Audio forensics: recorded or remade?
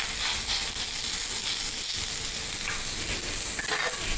recorded